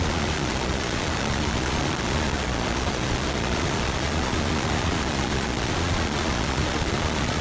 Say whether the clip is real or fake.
fake